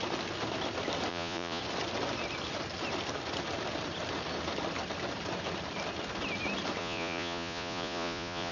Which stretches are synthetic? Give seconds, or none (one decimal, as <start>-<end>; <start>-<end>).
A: 1.1-1.6; 6.8-8.5

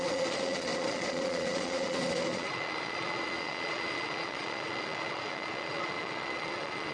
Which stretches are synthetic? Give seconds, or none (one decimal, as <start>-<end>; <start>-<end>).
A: 0.0-6.9